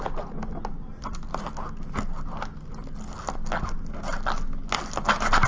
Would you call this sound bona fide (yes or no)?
yes